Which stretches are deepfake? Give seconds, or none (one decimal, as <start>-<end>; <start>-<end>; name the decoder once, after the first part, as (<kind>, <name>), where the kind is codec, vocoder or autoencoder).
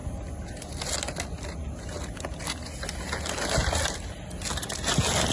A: none